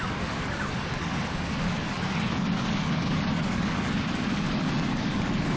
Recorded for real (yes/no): no